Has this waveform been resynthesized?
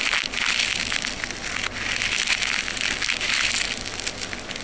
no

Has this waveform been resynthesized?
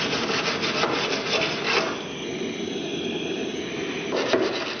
no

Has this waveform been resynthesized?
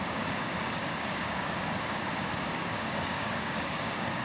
yes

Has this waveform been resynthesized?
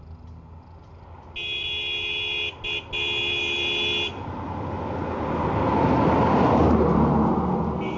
no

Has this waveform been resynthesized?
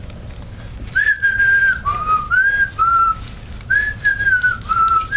no